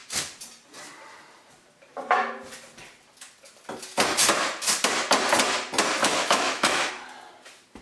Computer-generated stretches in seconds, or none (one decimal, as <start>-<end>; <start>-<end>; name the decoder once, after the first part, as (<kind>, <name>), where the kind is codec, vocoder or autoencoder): 6.0-6.9 (autoencoder, DAC-VAE)